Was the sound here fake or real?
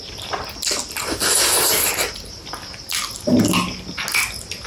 real